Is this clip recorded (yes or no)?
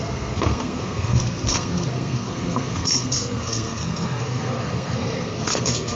no